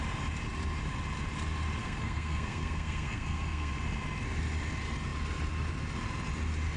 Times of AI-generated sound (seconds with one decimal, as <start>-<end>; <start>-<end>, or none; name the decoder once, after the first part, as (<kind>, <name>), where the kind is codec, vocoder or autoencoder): 1.8-3.7 (codec, SNAC)